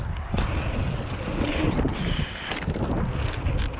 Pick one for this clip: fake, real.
real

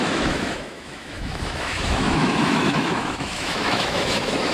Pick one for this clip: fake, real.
fake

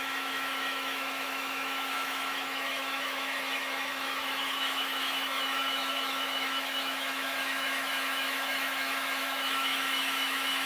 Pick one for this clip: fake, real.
fake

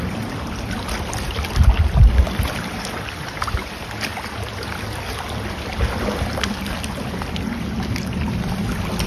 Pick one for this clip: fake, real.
real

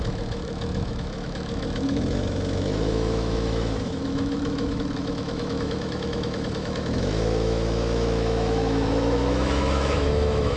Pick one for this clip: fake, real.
fake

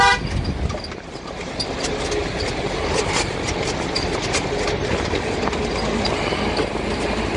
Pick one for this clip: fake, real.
real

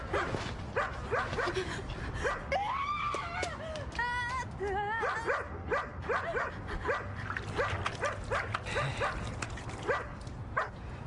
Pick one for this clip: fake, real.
real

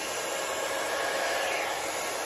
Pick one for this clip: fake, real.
real